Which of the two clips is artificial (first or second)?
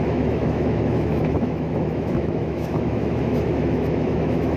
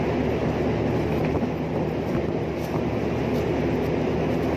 first